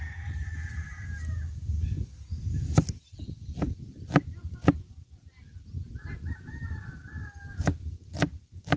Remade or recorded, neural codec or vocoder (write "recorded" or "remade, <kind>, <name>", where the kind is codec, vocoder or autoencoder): recorded